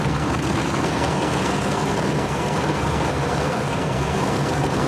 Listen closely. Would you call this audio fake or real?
fake